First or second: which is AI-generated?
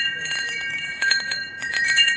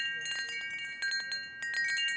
first